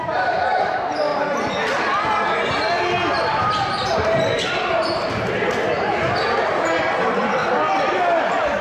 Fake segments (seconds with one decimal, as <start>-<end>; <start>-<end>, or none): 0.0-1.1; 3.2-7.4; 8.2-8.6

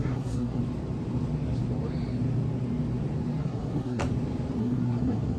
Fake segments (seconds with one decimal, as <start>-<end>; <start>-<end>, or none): 0.0-0.6; 3.4-4.0; 4.6-5.4

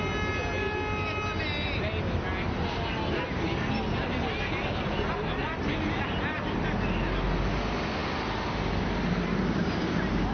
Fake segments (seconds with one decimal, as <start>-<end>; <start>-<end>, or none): none

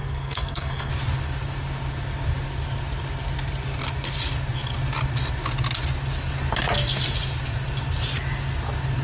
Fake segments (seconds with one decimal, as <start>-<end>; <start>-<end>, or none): 0.0-0.9